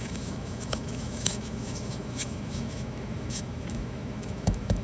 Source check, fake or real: fake